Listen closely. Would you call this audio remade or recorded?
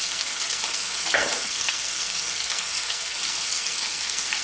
remade